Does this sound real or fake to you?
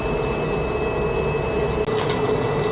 real